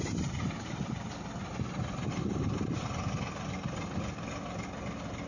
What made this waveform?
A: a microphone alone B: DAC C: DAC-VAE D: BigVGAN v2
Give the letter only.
A